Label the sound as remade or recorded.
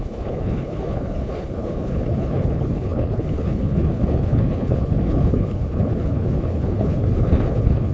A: remade